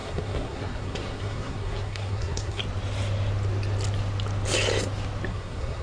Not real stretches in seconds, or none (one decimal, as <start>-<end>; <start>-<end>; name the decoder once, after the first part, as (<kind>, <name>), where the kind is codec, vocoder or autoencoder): 0.0-2.6 (codec, SNAC); 5.3-5.8